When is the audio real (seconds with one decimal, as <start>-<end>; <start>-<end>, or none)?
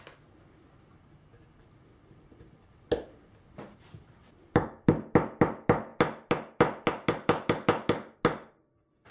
0.0-9.1